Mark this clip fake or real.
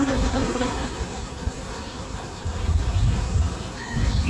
fake